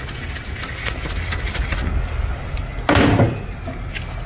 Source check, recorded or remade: recorded